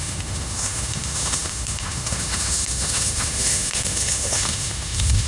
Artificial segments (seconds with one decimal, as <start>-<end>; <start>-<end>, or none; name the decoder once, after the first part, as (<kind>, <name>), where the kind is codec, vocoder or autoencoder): 0.0-5.3 (autoencoder, DAC-VAE)